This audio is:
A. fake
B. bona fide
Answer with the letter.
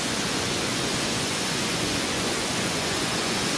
A